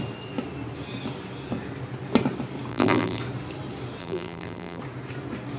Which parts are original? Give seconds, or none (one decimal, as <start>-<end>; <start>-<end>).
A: 0.0-2.7; 3.2-4.0; 4.8-5.6